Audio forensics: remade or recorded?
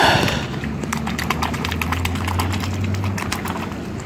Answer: recorded